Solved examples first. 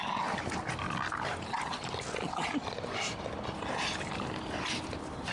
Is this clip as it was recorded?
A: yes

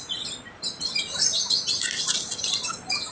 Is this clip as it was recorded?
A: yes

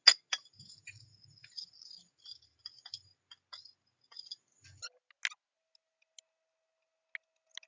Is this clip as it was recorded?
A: yes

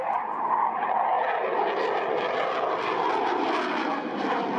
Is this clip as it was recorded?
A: yes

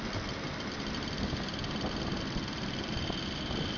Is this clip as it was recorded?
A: yes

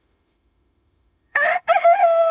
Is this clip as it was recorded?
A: no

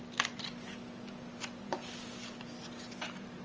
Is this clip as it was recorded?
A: yes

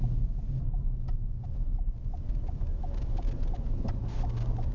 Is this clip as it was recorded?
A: yes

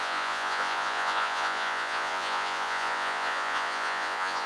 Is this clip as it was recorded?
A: no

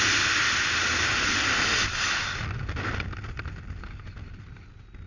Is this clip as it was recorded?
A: yes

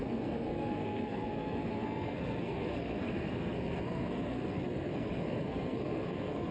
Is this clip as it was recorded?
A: no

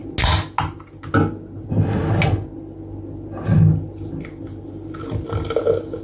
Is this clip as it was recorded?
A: yes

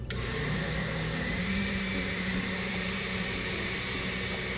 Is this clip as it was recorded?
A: no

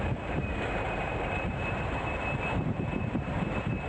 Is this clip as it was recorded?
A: no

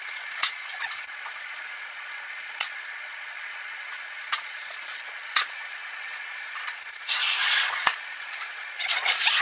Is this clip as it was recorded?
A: no